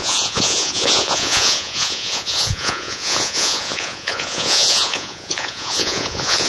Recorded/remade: remade